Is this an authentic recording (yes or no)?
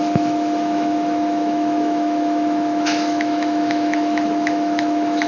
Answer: no